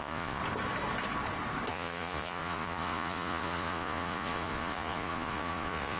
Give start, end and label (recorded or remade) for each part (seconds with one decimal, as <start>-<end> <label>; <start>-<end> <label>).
0.0-0.4 remade; 0.4-1.7 recorded; 1.7-6.0 remade

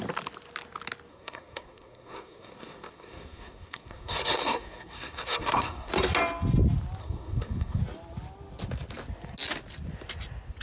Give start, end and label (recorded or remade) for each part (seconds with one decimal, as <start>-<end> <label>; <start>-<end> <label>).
0.0-1.1 recorded; 1.1-5.9 remade; 5.9-7.0 recorded; 7.0-7.8 remade; 7.8-10.6 recorded

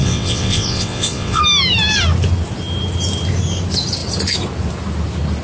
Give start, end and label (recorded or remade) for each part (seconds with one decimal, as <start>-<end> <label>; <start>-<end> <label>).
0.0-1.4 remade; 1.4-5.4 recorded

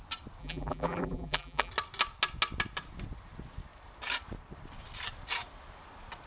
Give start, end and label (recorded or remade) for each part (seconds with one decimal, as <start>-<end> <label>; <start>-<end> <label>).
0.0-0.4 recorded; 0.4-1.7 remade; 1.7-6.3 recorded

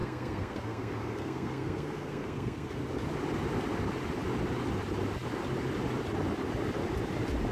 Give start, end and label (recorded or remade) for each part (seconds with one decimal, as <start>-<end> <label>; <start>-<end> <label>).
0.0-2.8 remade; 2.8-7.5 recorded